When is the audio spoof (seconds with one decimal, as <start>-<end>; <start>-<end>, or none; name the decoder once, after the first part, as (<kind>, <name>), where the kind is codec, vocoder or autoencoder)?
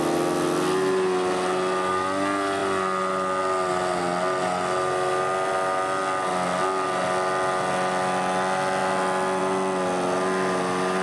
none